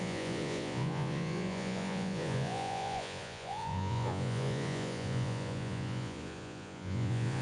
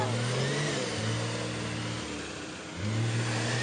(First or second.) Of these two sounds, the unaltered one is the second